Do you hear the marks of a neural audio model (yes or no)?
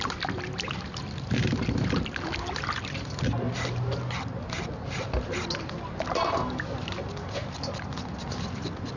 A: no